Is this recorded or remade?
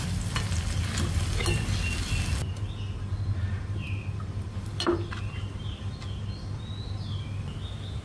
recorded